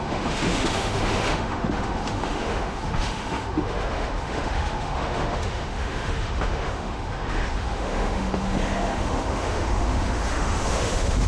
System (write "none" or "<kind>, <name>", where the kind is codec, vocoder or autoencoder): autoencoder, DAC-VAE